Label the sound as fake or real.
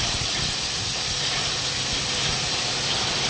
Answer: real